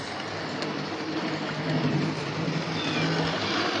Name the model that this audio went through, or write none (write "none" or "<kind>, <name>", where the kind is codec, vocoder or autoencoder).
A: none